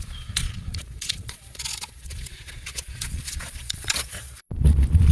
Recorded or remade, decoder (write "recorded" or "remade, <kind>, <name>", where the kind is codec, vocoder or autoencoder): remade, vocoder, Vocos